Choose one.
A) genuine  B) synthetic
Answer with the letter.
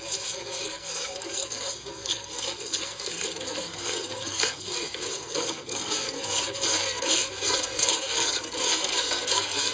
B